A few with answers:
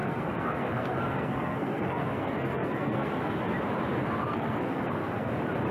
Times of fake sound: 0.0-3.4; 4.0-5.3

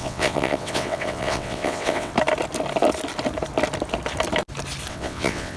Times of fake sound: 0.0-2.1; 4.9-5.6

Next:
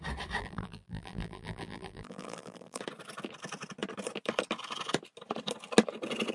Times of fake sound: 0.4-2.8

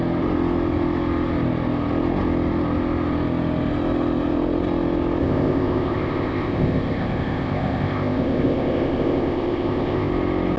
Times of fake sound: 5.2-10.1

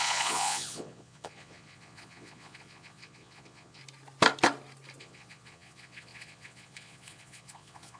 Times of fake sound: 0.0-3.8; 5.0-8.0

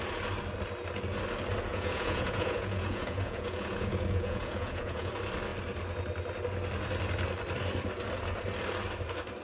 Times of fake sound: 1.7-5.1

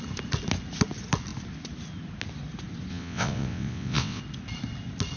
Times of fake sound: 2.9-4.2